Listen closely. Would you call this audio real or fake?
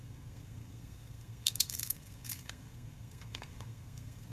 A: fake